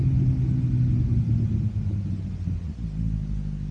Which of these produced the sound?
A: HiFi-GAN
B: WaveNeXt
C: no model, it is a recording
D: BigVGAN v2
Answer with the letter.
C